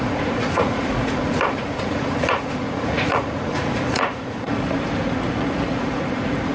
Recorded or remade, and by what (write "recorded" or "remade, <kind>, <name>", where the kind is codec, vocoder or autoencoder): remade, vocoder, Vocos